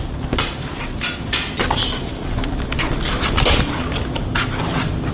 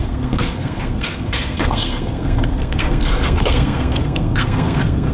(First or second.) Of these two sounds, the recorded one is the first